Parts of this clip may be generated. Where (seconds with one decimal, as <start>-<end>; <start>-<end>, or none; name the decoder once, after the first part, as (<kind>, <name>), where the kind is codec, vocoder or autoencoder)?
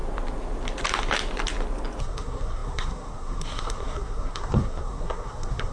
2.0-5.7 (codec, SNAC)